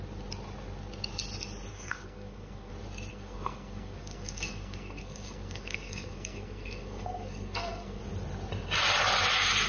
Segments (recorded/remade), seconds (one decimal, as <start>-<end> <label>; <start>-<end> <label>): 0.0-1.7 recorded; 1.7-2.7 remade; 2.7-3.1 recorded; 3.1-8.0 remade; 8.0-9.7 recorded